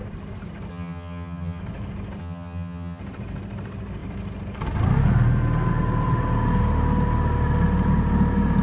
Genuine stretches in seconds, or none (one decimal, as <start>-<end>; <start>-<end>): 0.0-0.7; 1.6-2.2; 3.0-8.6